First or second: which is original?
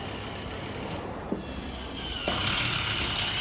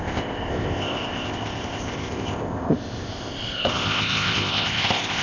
first